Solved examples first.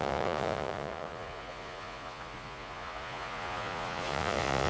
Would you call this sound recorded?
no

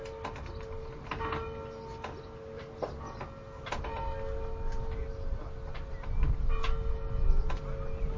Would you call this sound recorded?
yes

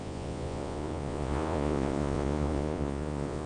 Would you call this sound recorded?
no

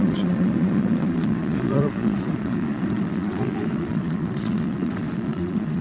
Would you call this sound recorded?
no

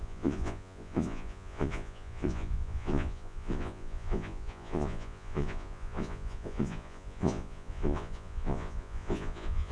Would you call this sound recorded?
no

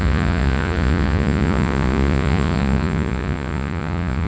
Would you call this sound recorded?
no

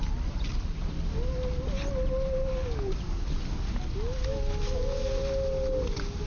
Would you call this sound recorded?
yes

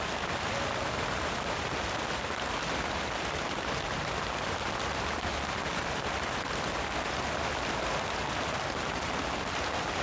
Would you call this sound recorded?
yes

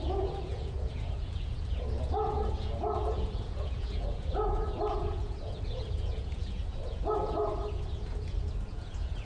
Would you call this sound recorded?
no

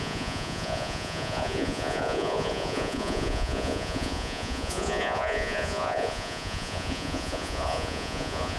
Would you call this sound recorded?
no